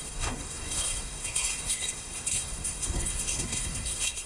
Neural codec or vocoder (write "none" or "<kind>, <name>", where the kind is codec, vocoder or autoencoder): codec, SNAC